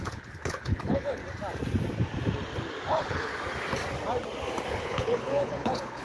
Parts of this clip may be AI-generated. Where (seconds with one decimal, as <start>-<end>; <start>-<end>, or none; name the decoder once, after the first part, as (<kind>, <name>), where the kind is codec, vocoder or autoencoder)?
0.0-1.2 (codec, HILCodec); 2.9-3.3; 4.7-6.0